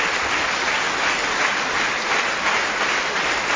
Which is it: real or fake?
real